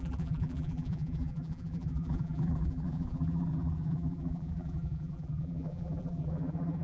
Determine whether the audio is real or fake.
fake